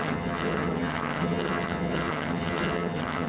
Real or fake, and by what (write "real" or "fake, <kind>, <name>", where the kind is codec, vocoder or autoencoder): fake, vocoder, HiFi-GAN